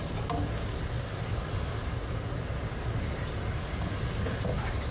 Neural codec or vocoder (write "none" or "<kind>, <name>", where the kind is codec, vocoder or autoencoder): none